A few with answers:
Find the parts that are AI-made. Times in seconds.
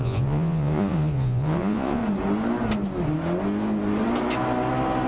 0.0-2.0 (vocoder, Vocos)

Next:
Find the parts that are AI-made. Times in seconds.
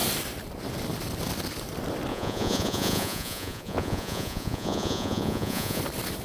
2.1-5.8 (vocoder, Vocos)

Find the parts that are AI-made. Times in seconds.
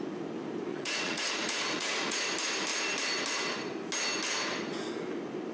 0.7-2.3 (vocoder, Vocos)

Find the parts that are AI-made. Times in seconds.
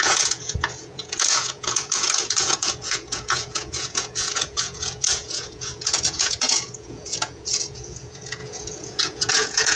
0.0-9.8 (vocoder, Vocos)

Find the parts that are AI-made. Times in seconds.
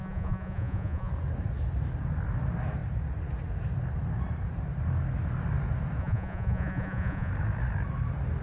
0.0-1.1 (vocoder, Vocos); 6.0-7.3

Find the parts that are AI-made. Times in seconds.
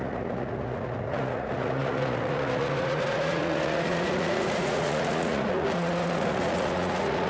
0.0-7.3 (vocoder, Vocos)